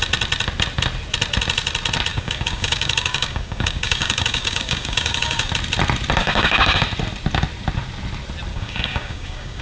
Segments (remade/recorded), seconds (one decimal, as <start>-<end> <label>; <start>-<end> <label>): 0.0-2.1 recorded; 2.1-5.5 remade; 5.5-6.2 recorded; 6.2-6.8 remade; 6.8-8.5 recorded; 8.5-9.6 remade